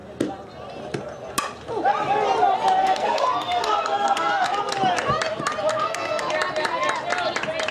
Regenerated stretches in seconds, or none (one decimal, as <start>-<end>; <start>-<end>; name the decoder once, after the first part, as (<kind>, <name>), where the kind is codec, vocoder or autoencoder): 2.8-4.6 (codec, SNAC); 5.7-6.3